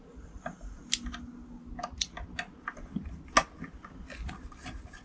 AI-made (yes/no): no